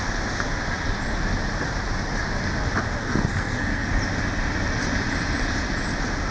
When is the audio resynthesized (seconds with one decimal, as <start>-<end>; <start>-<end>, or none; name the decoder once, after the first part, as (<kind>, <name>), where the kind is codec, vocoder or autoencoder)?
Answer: 3.0-3.9 (codec, SNAC)